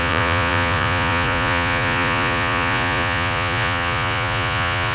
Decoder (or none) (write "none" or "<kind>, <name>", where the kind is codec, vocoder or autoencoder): vocoder, Vocos